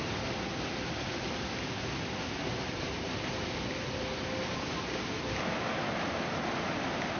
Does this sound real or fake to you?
real